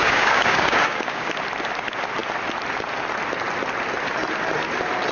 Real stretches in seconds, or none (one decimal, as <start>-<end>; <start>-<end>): 1.3-5.1